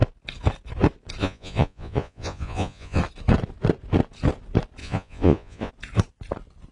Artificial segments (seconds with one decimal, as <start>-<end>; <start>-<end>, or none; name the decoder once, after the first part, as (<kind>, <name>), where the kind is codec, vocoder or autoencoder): 1.2-3.0 (vocoder, Vocos); 4.8-5.7